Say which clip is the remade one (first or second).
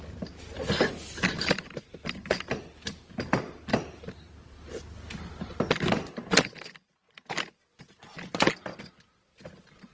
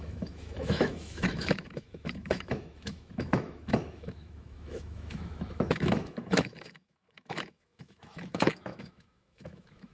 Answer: second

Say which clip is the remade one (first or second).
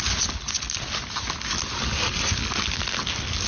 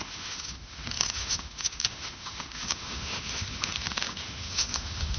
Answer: second